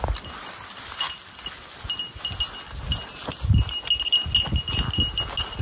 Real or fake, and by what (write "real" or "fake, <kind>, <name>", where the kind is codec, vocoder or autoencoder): real